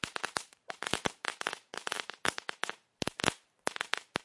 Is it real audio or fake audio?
fake